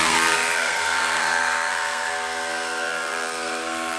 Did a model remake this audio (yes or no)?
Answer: yes